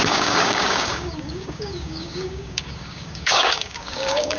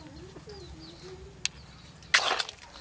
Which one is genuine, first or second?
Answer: second